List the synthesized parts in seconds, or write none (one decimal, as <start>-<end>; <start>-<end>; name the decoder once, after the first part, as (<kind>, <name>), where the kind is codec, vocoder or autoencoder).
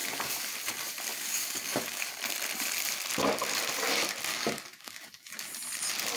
1.1-2.0 (codec, DAC); 4.3-5.3